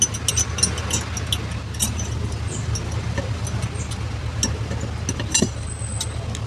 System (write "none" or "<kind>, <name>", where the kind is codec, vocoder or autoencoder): none